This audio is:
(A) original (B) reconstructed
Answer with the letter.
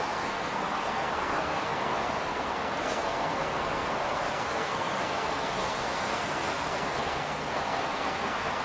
B